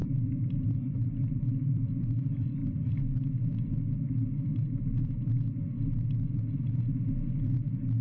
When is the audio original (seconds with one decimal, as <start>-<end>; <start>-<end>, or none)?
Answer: none